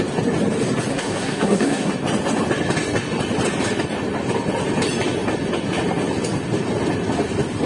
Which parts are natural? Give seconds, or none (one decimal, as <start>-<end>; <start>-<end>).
0.0-0.9; 1.9-7.7